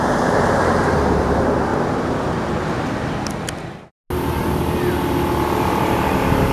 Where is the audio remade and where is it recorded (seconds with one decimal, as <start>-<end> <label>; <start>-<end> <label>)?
0.0-1.7 remade; 1.7-5.6 recorded; 5.6-6.5 remade